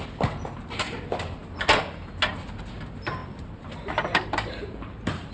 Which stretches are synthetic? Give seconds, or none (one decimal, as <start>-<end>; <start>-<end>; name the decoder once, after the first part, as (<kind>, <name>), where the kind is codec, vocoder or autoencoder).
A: 3.2-5.3 (vocoder, BigVGAN v2)